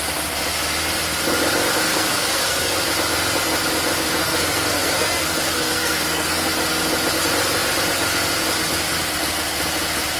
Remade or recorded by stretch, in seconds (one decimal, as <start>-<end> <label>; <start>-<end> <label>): 0.0-1.9 recorded; 1.9-2.8 remade; 2.8-4.2 recorded; 4.2-6.5 remade; 6.5-10.2 recorded